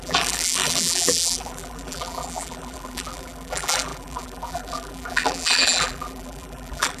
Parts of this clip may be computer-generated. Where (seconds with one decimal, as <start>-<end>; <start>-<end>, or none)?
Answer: 0.0-7.0